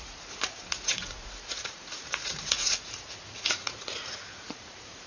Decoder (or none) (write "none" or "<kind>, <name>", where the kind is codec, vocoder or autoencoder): vocoder, Vocos